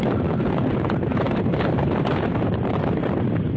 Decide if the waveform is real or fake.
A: fake